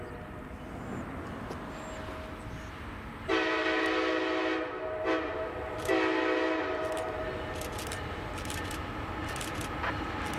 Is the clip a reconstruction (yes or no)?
no